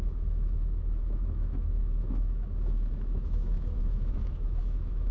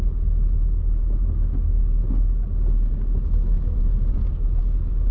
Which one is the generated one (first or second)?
first